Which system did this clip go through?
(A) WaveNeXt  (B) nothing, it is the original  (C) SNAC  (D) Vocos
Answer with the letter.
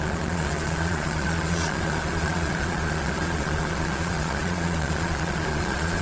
D